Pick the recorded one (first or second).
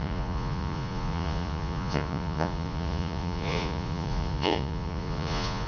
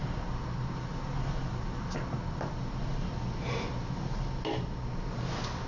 second